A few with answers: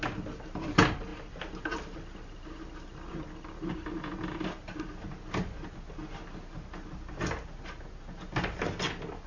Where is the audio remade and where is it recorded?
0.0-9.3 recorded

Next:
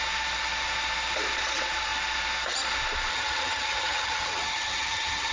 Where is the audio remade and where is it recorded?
0.0-3.1 recorded; 3.1-5.3 remade